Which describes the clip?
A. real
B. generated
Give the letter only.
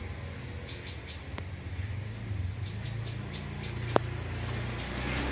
A